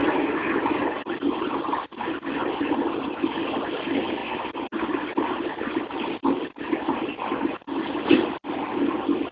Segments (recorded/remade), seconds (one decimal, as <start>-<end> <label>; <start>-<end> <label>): 0.0-0.7 recorded; 0.7-4.2 remade; 4.2-5.8 recorded; 5.8-9.3 remade